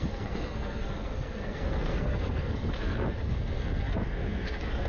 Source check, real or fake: fake